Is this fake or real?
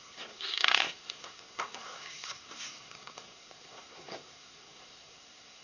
fake